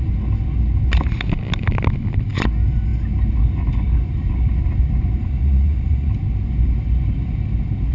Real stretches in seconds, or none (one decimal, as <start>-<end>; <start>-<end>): 0.0-5.2; 6.1-7.9